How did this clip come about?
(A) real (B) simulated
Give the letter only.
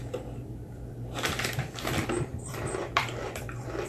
B